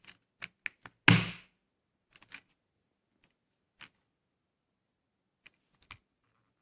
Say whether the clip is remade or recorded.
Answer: recorded